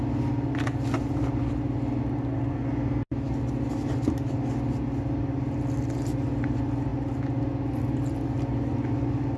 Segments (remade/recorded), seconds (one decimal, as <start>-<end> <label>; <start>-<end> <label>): 0.0-9.4 recorded